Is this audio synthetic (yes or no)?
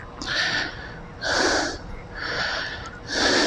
no